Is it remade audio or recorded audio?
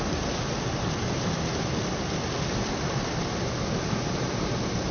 recorded